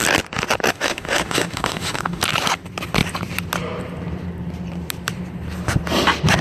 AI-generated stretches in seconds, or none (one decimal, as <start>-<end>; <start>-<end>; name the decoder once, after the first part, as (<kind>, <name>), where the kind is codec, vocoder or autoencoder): 0.7-2.2 (autoencoder, DAC-VAE)